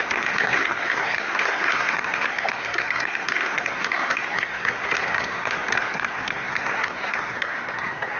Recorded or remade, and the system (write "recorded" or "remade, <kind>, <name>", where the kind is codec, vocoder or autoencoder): remade, codec, SNAC